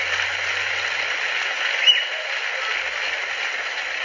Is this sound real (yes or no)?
yes